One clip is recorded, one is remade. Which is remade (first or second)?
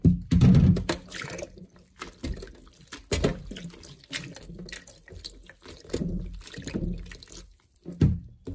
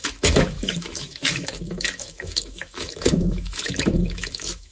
second